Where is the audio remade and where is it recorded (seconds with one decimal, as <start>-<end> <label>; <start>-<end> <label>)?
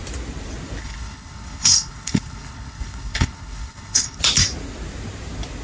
0.0-0.8 recorded; 0.8-4.2 remade; 4.2-5.6 recorded